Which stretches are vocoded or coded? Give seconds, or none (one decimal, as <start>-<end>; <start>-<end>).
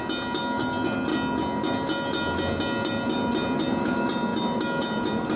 none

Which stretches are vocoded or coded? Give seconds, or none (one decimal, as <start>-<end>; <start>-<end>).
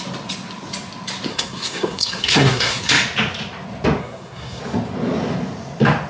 1.3-2.9; 4.0-4.6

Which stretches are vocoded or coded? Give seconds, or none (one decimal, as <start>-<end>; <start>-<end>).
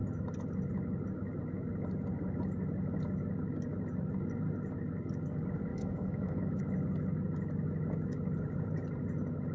5.7-6.6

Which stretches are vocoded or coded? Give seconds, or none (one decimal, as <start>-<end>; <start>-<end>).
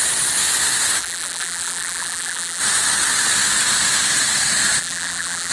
1.0-2.6; 4.8-5.5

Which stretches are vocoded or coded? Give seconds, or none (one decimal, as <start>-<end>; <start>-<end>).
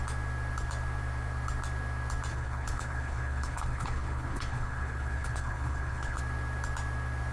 2.3-6.2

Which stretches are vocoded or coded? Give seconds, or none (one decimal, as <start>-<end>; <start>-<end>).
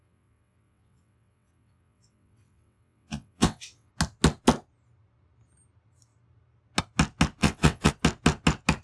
0.0-3.9; 7.4-7.9